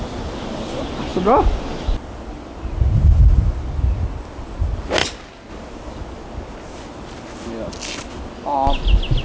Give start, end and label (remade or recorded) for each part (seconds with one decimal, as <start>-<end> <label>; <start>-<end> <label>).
0.0-9.2 recorded